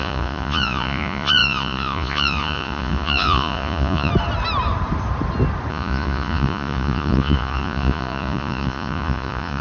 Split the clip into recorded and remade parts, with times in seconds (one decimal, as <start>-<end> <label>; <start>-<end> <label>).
0.0-4.1 remade; 4.1-5.7 recorded; 5.7-9.6 remade